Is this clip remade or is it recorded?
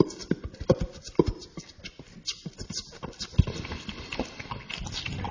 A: recorded